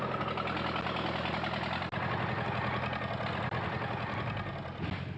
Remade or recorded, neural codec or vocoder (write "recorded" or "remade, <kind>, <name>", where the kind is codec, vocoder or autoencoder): recorded